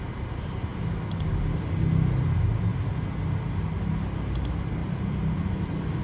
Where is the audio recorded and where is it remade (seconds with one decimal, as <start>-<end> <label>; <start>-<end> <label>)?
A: 0.0-0.7 recorded; 0.7-1.6 remade; 1.6-4.8 recorded; 4.8-5.4 remade; 5.4-6.0 recorded